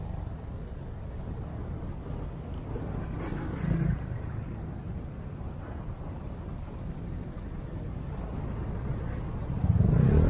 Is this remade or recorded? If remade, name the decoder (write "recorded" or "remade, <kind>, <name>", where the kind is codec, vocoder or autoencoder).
recorded